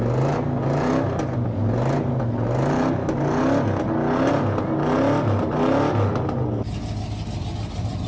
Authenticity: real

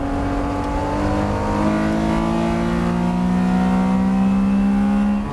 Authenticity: real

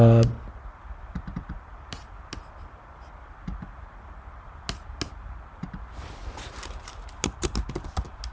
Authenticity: real